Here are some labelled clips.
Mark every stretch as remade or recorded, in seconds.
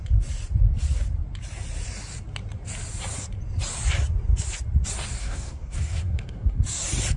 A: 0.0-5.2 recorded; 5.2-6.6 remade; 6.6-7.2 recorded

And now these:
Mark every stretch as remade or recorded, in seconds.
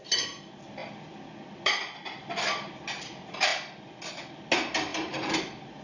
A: 0.0-0.8 recorded; 0.8-2.8 remade; 2.8-4.9 recorded; 4.9-5.8 remade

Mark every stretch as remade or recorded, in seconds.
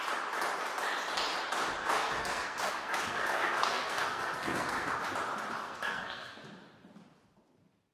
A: 0.0-1.8 recorded; 1.8-5.0 remade; 5.0-5.6 recorded; 5.6-6.4 remade; 6.4-7.9 recorded